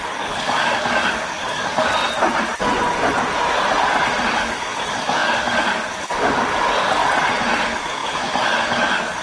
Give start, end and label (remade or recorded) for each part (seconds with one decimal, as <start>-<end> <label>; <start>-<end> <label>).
0.0-2.0 remade; 2.0-4.3 recorded; 4.3-7.0 remade; 7.0-7.6 recorded; 7.6-9.2 remade